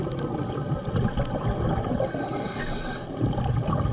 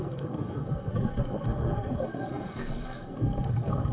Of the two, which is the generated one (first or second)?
second